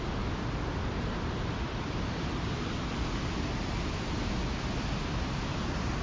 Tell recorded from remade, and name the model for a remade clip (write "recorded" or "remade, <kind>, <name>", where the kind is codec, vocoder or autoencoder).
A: recorded